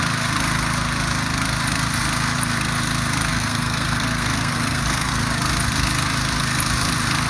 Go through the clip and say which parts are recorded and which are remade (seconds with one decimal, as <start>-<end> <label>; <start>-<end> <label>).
0.0-3.3 recorded; 3.3-5.1 remade; 5.1-7.3 recorded